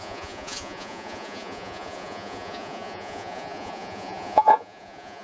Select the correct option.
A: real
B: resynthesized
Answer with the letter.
B